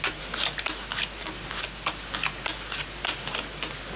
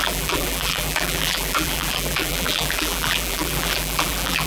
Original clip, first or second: first